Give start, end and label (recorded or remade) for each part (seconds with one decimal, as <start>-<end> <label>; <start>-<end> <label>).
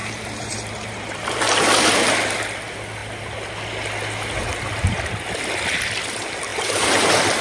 0.0-1.4 remade; 1.4-6.5 recorded; 6.5-7.4 remade